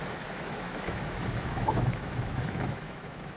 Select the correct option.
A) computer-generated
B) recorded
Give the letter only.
A